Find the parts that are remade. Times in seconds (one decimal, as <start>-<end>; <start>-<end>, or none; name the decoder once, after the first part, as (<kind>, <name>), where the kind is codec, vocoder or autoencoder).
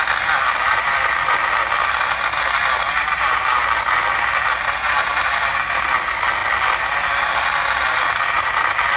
none